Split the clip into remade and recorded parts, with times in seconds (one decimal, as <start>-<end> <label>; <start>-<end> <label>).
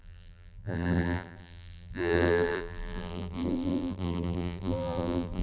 0.0-5.4 remade